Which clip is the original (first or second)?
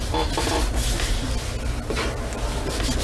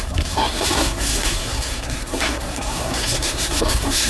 first